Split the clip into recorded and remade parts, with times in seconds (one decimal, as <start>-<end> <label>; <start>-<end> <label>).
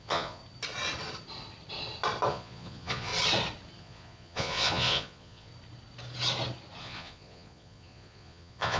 0.0-0.4 remade; 0.4-2.3 recorded; 2.3-3.1 remade; 3.1-3.8 recorded; 3.8-5.5 remade; 5.5-6.8 recorded; 6.8-8.8 remade